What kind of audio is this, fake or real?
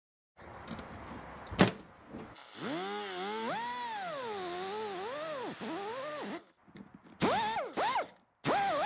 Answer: real